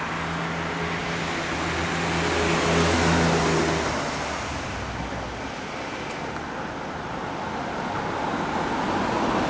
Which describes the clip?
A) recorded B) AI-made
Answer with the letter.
A